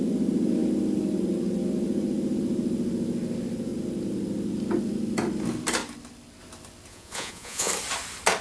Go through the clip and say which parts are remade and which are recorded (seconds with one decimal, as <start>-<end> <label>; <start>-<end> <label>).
0.0-6.9 recorded; 6.9-7.7 remade; 7.7-8.4 recorded